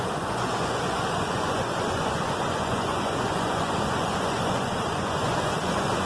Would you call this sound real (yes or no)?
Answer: no